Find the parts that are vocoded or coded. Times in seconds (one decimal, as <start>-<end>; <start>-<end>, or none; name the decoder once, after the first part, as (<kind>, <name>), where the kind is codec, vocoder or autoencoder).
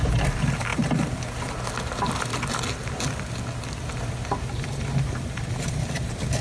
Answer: none